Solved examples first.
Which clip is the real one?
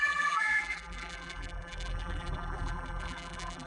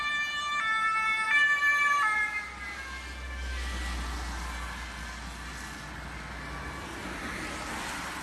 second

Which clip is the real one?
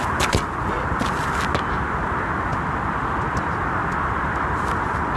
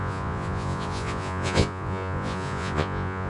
first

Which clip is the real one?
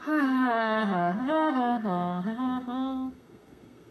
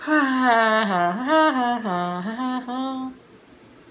second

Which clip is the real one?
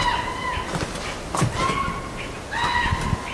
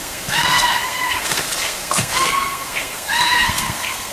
first